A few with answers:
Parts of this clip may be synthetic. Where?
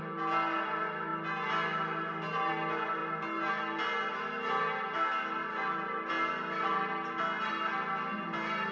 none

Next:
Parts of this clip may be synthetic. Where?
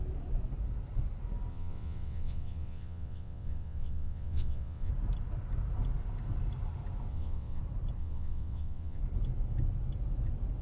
1.5-4.9 (vocoder, WaveNeXt); 7.1-7.6; 8.0-9.0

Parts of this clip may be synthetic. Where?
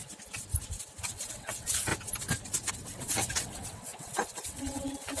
1.0-1.9 (vocoder, WaveNeXt); 2.7-5.2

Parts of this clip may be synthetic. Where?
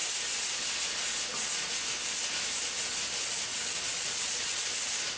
3.5-4.6 (vocoder, WaveNeXt)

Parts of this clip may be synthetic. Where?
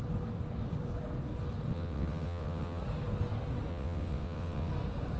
1.7-2.8 (vocoder, WaveNeXt); 3.7-4.7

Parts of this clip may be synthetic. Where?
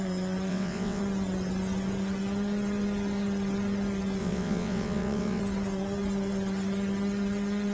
0.5-1.0 (vocoder, WaveNeXt); 4.2-5.4